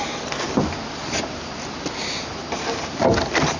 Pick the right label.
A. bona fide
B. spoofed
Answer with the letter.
A